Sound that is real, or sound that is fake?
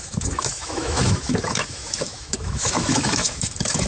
fake